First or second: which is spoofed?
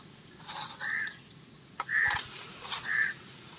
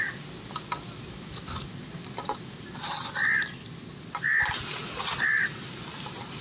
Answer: first